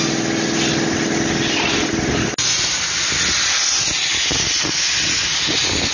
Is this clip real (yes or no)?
yes